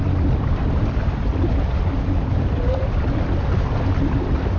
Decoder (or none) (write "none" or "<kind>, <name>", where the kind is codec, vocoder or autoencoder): vocoder, BigVGAN v2